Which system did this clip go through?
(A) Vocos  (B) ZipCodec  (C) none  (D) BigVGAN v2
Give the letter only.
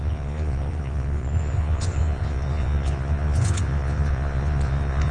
A